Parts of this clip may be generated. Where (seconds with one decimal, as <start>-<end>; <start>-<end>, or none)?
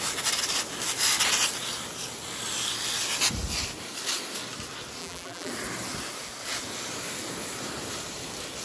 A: 5.0-5.5